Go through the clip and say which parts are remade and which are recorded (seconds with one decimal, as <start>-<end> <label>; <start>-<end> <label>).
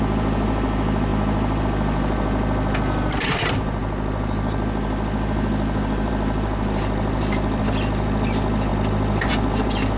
0.0-10.0 recorded